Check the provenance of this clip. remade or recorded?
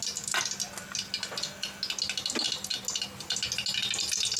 recorded